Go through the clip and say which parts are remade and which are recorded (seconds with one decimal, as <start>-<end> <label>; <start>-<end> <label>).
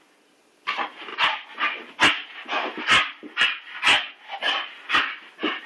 0.0-5.7 recorded